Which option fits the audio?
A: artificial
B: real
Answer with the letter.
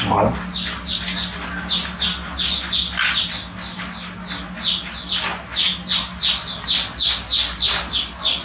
B